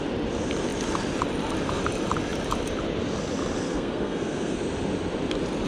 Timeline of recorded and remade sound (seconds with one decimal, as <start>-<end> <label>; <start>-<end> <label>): 0.0-3.7 recorded; 3.7-4.6 remade; 4.6-5.7 recorded